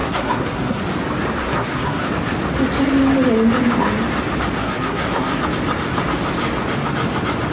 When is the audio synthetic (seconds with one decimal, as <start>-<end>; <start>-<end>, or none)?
0.0-0.8; 1.4-2.1; 4.6-5.4